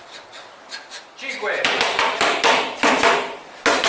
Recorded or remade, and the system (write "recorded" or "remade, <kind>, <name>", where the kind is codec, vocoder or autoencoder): recorded